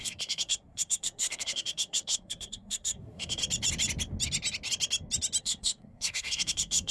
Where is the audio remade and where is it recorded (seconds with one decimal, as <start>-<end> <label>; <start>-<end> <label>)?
0.0-3.4 remade; 3.4-5.4 recorded; 5.4-6.9 remade